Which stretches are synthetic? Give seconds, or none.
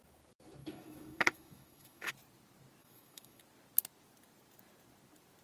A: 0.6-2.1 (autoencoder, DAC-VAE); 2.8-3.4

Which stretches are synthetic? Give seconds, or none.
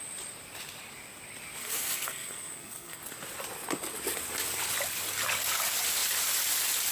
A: 1.6-3.0 (codec, SNAC)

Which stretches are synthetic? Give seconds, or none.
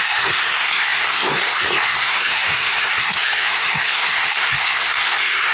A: 0.0-5.5 (codec, SNAC)